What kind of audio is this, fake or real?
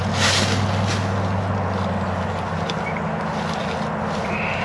real